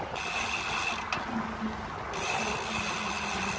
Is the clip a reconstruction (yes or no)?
no